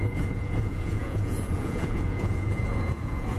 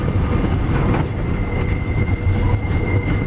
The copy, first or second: first